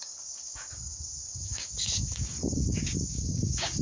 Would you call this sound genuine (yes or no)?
no